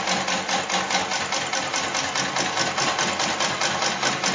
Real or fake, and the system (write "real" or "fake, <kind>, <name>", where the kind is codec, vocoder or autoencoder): real